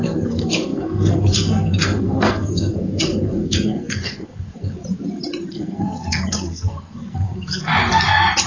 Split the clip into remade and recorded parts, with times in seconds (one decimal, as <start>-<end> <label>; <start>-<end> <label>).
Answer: 0.0-4.8 remade; 4.8-5.5 recorded; 5.5-7.7 remade; 7.7-8.5 recorded